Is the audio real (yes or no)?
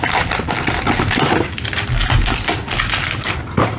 yes